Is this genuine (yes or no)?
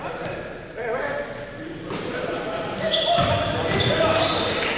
yes